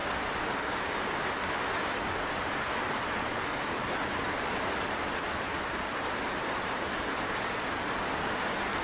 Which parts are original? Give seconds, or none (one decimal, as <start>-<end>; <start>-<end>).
0.0-8.8